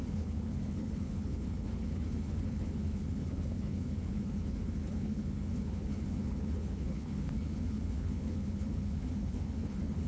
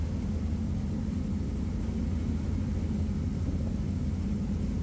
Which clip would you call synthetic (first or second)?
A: first